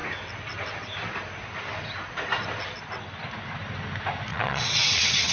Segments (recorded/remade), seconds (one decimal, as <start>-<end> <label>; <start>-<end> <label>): 0.0-4.3 recorded; 4.3-5.3 remade